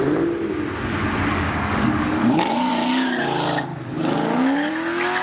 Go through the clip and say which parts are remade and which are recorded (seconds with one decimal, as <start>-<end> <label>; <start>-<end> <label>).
0.0-1.3 recorded; 1.3-2.7 remade; 2.7-3.7 recorded; 3.7-4.7 remade; 4.7-5.2 recorded